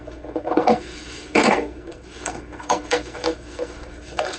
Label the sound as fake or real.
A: fake